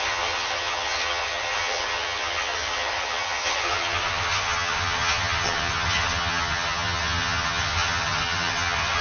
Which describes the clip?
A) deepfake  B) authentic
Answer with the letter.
A